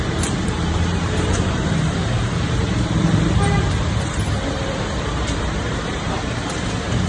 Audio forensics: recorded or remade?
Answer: remade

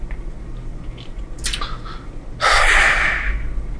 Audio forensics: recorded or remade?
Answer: recorded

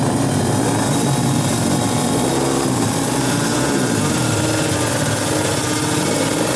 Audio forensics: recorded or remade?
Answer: recorded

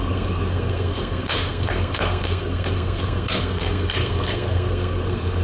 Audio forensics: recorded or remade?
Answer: remade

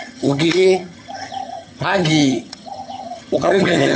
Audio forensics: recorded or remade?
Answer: remade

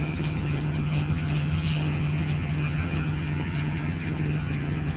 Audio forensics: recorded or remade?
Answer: remade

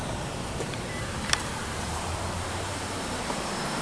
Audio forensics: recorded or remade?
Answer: remade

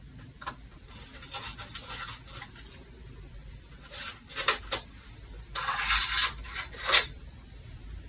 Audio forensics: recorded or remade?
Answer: recorded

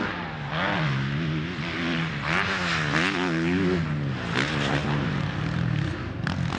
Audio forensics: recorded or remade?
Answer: recorded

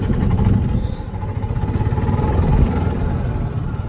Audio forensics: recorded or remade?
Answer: recorded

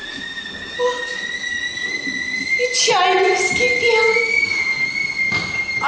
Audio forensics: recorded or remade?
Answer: recorded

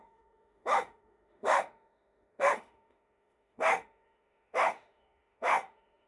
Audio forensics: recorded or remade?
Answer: remade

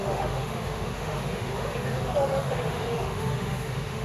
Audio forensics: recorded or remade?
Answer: remade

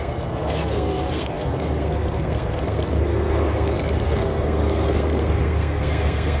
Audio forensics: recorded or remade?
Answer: remade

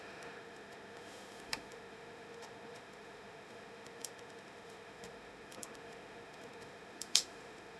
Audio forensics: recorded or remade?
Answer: remade